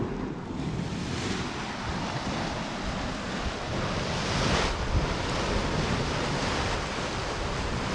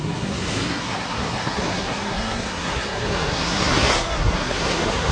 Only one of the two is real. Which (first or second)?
first